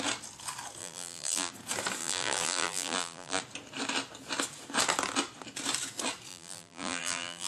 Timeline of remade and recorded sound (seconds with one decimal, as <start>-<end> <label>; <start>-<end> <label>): 0.0-0.8 recorded; 0.8-1.5 remade; 1.5-2.0 recorded; 2.0-3.4 remade; 3.4-6.3 recorded; 6.3-7.5 remade